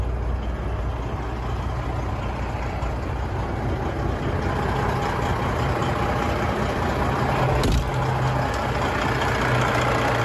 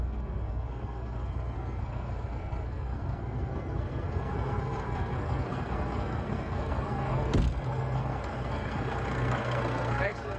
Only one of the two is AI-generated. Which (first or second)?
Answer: second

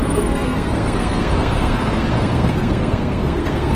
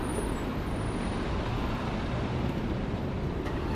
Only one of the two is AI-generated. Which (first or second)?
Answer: first